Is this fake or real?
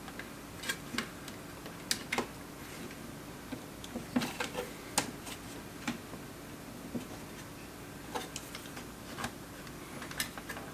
real